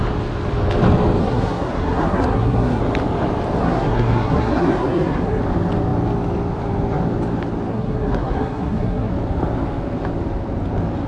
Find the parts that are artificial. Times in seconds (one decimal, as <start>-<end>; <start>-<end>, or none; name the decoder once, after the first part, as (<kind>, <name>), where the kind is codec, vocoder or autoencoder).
1.2-2.8 (codec, SNAC); 3.6-5.4; 7.7-9.1